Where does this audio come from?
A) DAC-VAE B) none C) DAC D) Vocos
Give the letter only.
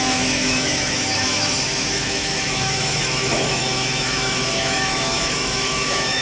A